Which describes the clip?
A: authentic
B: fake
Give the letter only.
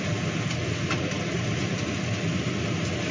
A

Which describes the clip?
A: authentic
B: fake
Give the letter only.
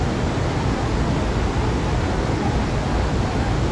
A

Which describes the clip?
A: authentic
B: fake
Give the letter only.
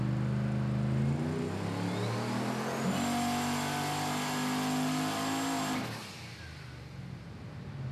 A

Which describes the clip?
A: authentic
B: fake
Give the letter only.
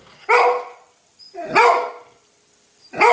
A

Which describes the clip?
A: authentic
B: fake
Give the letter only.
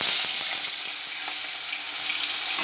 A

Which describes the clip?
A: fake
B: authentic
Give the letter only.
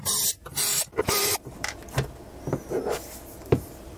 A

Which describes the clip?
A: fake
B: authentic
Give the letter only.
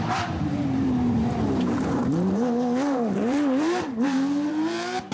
A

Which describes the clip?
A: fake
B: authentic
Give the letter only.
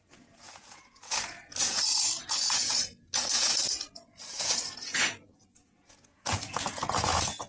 A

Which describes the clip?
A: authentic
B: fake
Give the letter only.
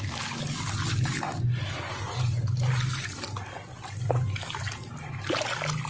A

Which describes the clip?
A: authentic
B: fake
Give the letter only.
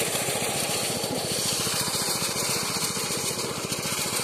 B